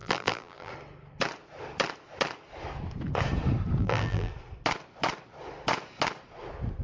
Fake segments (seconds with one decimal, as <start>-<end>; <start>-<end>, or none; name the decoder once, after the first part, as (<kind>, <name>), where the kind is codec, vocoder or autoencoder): 0.0-0.7 (vocoder, BigVGAN v2); 3.8-4.3